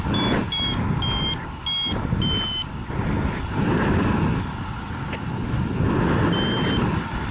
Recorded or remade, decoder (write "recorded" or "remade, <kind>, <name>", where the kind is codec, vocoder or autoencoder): recorded